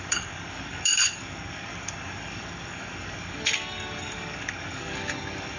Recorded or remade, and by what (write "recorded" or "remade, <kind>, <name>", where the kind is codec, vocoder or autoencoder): remade, codec, DAC